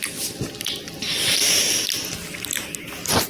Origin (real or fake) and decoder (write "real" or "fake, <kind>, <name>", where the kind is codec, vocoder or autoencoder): real